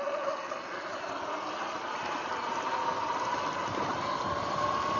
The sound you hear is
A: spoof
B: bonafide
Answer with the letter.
B